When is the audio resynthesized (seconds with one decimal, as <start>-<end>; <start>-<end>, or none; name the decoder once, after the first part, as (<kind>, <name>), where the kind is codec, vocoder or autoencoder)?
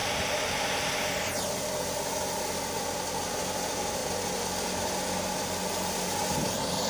3.3-4.0 (vocoder, BigVGAN v2); 6.2-6.9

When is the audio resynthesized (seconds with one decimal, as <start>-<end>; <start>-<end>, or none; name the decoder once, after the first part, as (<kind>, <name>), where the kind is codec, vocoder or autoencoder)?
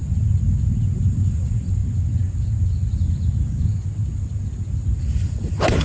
1.1-1.8 (vocoder, BigVGAN v2); 5.0-5.8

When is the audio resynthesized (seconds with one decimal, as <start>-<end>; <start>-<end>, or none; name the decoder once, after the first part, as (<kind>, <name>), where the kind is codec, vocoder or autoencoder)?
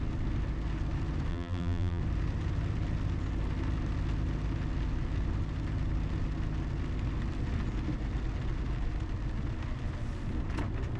1.3-2.0 (vocoder, BigVGAN v2)